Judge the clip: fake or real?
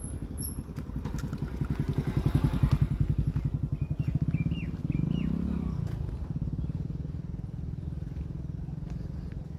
real